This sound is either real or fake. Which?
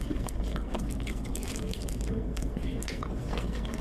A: fake